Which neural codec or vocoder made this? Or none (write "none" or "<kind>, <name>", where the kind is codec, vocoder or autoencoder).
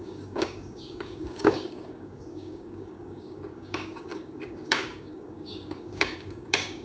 codec, DAC